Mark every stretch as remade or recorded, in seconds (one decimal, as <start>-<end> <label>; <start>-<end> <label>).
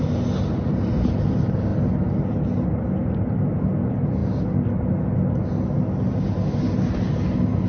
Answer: 0.0-7.7 recorded